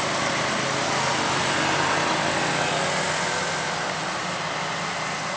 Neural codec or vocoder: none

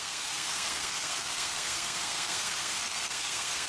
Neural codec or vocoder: codec, SNAC